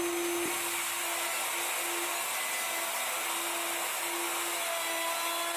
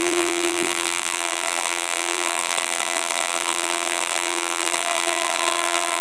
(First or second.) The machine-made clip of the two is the second